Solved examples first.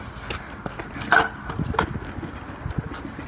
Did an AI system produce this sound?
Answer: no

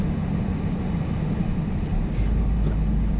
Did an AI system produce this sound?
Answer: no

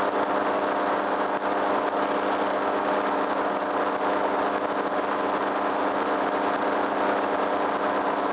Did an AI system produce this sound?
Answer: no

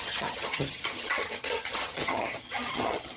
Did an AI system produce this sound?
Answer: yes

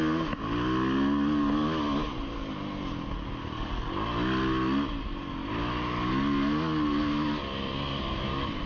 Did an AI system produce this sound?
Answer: no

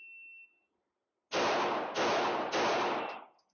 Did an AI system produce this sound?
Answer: no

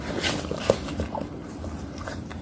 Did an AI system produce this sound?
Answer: no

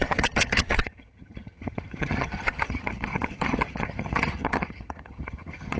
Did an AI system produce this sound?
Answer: yes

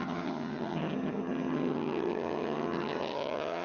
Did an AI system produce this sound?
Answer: yes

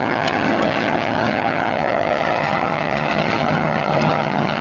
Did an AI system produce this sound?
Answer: yes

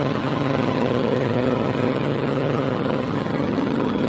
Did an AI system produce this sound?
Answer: yes